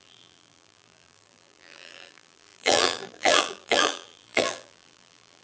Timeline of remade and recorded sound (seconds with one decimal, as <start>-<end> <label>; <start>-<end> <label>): 0.0-5.4 remade